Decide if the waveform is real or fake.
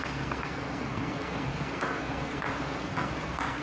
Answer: fake